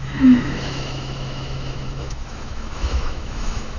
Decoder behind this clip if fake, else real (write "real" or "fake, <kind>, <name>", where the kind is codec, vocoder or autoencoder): fake, autoencoder, DAC-VAE